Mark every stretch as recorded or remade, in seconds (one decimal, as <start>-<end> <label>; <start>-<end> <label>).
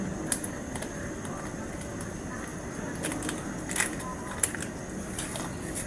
0.0-4.1 recorded; 4.1-4.6 remade; 4.6-5.9 recorded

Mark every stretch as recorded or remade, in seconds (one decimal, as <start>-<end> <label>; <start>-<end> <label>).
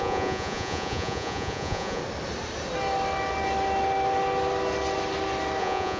0.0-2.0 remade; 2.0-5.6 recorded; 5.6-6.0 remade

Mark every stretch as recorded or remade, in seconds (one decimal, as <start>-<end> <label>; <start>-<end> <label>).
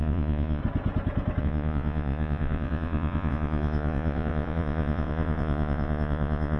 0.0-0.6 remade; 0.6-1.4 recorded; 1.4-6.6 remade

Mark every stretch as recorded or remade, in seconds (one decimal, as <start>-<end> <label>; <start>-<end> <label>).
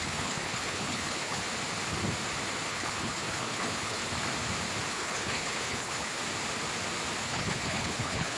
0.0-1.4 remade; 1.4-2.7 recorded; 2.7-4.0 remade; 4.0-4.9 recorded; 4.9-6.2 remade; 6.2-7.2 recorded; 7.2-8.4 remade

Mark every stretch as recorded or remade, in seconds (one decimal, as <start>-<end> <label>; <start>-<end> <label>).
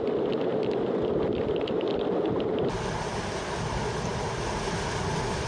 0.0-5.5 recorded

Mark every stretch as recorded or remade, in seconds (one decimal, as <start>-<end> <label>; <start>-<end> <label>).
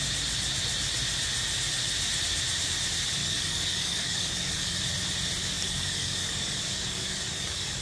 0.0-3.2 recorded; 3.2-4.8 remade; 4.8-5.4 recorded; 5.4-7.8 remade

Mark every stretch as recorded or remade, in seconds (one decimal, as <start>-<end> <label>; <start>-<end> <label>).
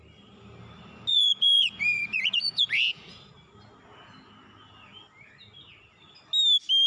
0.0-1.1 recorded; 1.1-3.3 remade; 3.3-6.9 recorded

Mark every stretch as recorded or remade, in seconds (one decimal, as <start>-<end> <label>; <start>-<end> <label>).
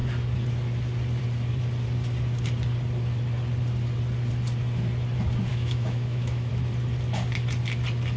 0.0-5.5 recorded; 5.5-6.5 remade; 6.5-8.2 recorded